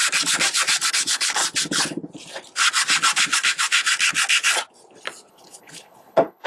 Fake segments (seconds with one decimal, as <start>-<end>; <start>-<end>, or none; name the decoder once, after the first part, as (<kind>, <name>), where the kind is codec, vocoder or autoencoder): 0.9-1.4 (codec, HILCodec); 5.3-6.5